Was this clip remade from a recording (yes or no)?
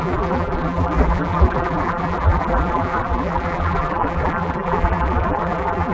yes